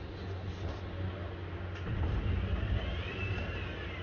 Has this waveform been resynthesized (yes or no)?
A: no